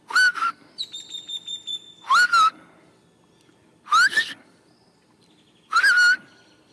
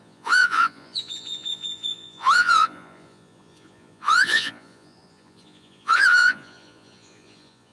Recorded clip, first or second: first